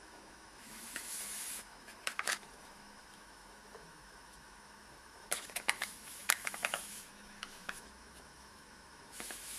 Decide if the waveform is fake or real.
fake